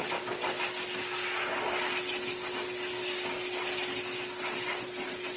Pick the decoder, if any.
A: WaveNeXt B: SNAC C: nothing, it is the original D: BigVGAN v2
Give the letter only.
C